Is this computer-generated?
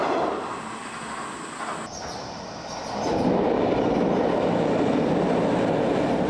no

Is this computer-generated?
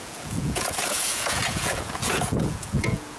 yes